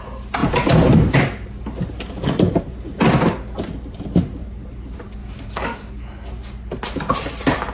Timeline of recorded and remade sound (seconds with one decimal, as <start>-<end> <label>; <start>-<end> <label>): 0.0-5.2 recorded; 5.2-6.5 remade; 6.5-7.7 recorded